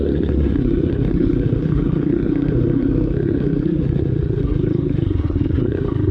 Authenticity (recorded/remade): remade